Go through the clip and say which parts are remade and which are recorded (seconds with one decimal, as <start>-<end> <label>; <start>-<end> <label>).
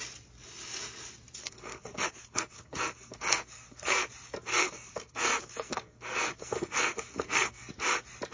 0.0-1.4 recorded; 1.4-4.1 remade; 4.1-4.5 recorded; 4.5-7.7 remade; 7.7-8.3 recorded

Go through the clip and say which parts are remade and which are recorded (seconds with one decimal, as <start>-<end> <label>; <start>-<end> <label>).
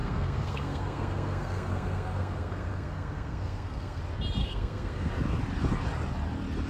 0.0-4.0 remade; 4.0-4.4 recorded; 4.4-5.1 remade; 5.1-6.7 recorded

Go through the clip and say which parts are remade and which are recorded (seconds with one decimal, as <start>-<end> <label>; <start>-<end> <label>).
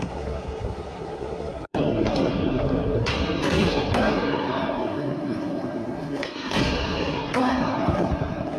0.0-8.6 remade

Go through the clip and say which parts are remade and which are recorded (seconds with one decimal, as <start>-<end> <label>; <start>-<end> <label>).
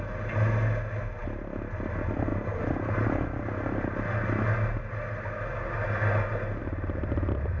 0.0-7.6 recorded